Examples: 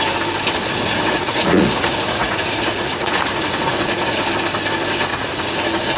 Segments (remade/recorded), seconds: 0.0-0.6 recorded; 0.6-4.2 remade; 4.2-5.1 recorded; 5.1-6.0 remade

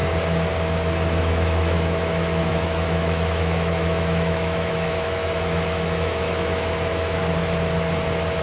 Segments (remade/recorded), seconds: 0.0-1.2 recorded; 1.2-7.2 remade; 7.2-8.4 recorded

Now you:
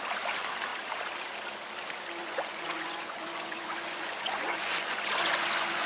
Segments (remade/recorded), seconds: 0.0-2.2 recorded; 2.2-5.9 remade

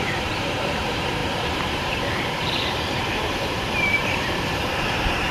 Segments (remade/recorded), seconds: 0.0-5.3 remade

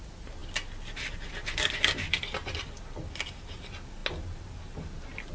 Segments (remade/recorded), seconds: 0.0-5.3 recorded

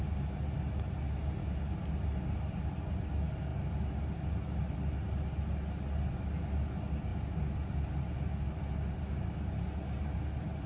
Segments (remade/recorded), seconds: 0.0-10.7 recorded

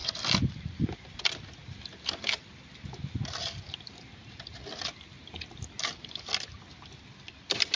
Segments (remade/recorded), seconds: 0.0-7.8 recorded

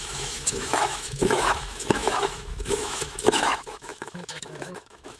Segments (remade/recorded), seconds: 0.0-5.2 remade